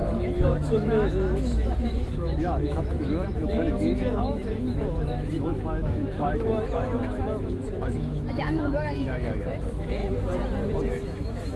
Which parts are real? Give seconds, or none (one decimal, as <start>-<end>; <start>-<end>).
10.0-10.9